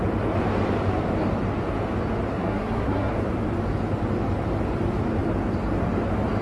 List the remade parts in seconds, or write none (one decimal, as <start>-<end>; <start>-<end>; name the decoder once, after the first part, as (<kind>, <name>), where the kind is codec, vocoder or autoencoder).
2.3-3.1 (codec, SNAC)